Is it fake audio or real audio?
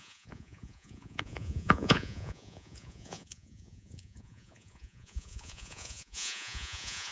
fake